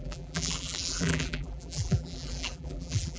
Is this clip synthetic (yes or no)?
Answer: yes